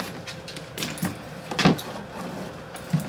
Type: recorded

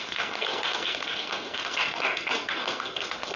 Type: remade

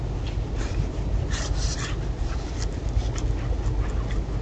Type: recorded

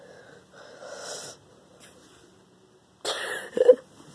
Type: recorded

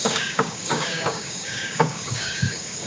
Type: remade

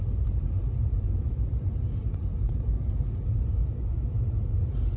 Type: recorded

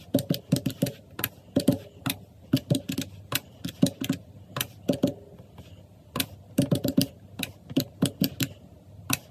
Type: recorded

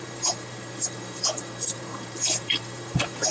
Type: remade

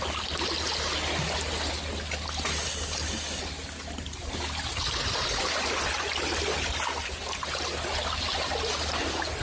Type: recorded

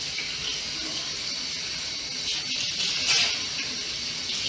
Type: recorded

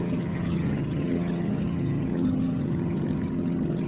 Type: remade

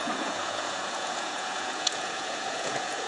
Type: remade